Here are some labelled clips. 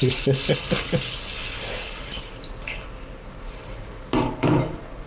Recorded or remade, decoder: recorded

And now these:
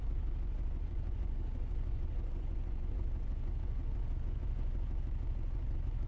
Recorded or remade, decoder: remade, vocoder, Vocos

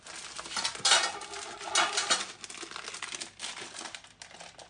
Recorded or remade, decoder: recorded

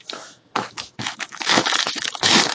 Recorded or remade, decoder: remade, autoencoder, DAC-VAE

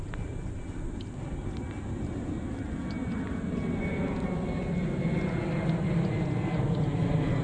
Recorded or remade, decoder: recorded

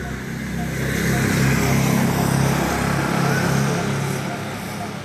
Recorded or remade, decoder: recorded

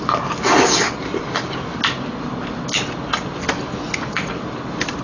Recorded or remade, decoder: recorded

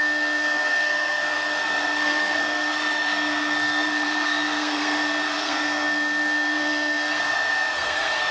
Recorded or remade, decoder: remade, codec, SNAC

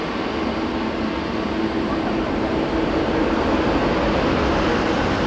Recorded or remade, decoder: recorded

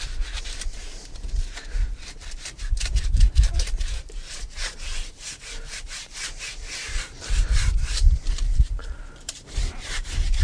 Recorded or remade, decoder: remade, vocoder, BigVGAN v2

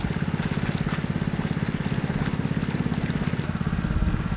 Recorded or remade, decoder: recorded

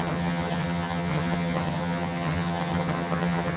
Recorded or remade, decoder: remade, vocoder, HiFi-GAN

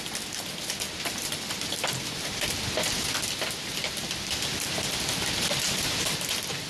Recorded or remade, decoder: recorded